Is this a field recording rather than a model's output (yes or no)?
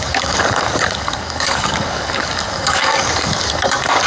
no